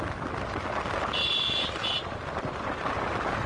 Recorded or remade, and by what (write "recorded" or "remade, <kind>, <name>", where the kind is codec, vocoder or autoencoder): recorded